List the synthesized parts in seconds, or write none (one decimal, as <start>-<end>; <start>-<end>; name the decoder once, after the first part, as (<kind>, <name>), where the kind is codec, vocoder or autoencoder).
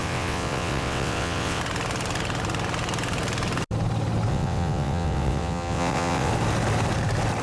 0.0-1.6 (vocoder, WaveNeXt); 4.3-6.3